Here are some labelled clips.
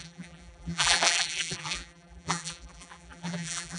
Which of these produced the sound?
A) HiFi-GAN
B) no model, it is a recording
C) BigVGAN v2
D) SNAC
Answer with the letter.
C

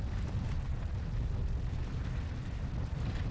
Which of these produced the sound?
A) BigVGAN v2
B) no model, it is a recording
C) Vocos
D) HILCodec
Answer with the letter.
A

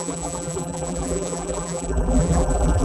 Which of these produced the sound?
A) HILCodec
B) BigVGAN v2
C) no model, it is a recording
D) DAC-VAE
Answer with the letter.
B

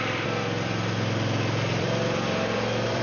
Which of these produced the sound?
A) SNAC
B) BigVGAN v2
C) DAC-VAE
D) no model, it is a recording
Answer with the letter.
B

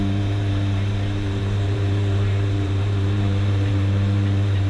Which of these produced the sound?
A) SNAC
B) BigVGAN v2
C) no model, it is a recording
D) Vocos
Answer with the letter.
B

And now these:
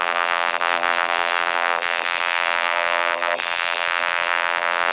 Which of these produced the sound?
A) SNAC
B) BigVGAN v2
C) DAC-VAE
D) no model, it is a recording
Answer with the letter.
B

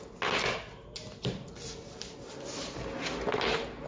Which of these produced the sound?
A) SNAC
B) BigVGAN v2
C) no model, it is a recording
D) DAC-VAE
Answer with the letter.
C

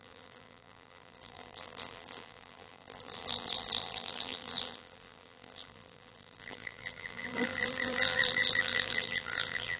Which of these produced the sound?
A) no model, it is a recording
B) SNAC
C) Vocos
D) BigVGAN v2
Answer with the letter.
D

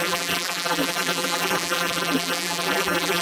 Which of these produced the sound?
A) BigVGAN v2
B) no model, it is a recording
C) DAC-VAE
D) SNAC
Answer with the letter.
A